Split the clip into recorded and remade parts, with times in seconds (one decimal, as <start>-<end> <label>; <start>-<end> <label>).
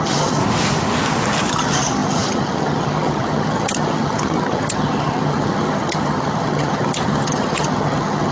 0.0-0.4 remade; 0.4-1.5 recorded; 1.5-8.3 remade